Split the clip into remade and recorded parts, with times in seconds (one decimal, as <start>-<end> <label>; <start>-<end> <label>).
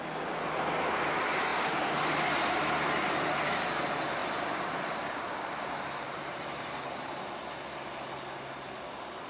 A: 0.0-1.5 recorded; 1.5-2.7 remade; 2.7-4.2 recorded; 4.2-7.2 remade; 7.2-9.3 recorded